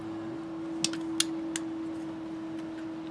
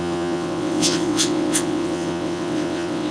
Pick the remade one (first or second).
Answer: second